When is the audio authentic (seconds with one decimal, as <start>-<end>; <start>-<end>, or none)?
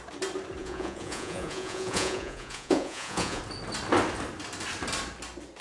0.0-0.6; 3.4-5.6